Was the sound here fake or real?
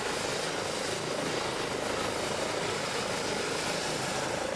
real